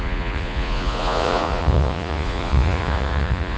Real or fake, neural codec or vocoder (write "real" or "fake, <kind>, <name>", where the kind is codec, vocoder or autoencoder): fake, vocoder, Vocos